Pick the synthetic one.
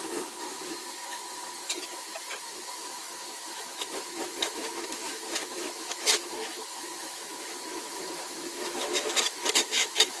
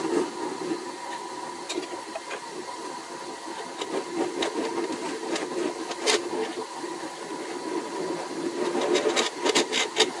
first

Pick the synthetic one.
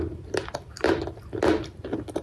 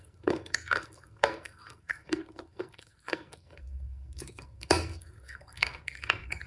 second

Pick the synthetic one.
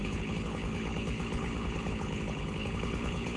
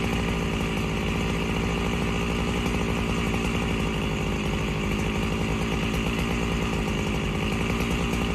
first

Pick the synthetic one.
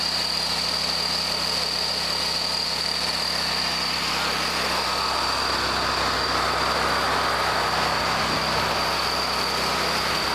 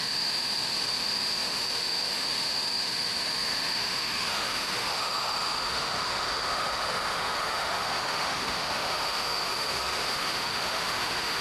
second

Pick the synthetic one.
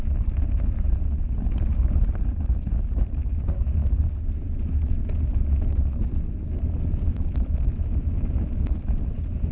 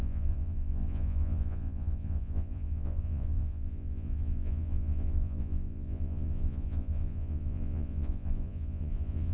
second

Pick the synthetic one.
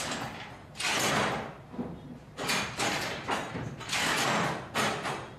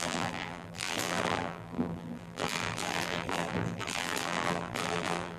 second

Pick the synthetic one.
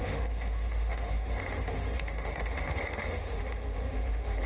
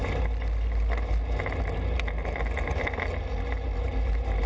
first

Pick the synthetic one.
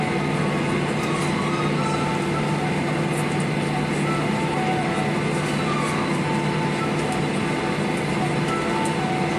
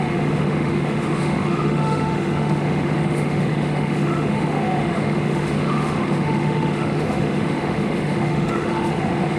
second